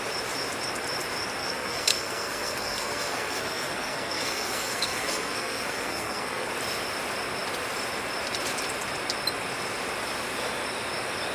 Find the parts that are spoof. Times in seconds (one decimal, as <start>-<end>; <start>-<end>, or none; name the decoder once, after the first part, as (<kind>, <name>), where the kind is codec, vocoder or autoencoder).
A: 1.4-6.5 (codec, SNAC)